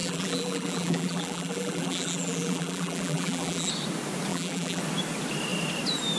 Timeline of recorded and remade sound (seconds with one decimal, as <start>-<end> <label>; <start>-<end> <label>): 0.0-3.7 remade; 3.7-4.3 recorded; 4.3-4.8 remade; 4.8-6.2 recorded